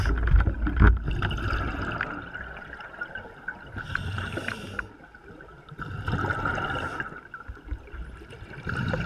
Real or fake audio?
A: real